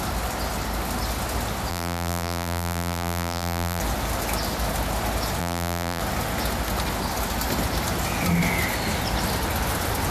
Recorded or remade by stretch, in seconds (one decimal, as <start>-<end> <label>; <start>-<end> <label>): 0.0-1.7 recorded; 1.7-3.8 remade; 3.8-5.4 recorded; 5.4-6.0 remade; 6.0-10.1 recorded